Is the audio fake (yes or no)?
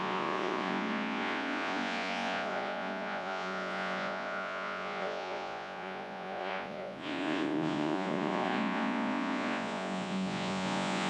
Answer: yes